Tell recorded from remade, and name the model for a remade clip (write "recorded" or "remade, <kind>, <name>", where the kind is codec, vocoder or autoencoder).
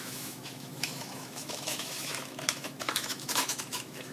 remade, autoencoder, DAC-VAE